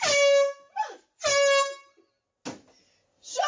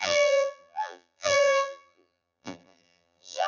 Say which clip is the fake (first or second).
second